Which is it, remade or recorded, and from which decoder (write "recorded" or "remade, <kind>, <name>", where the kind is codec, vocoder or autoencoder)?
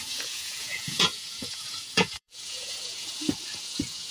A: remade, vocoder, Vocos